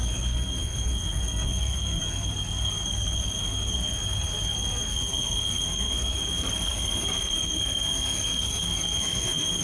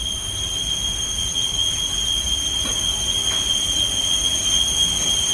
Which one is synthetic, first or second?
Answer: first